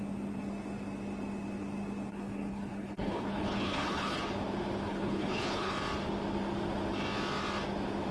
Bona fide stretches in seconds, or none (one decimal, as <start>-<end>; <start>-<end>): 0.0-2.1; 4.2-4.9; 5.7-8.1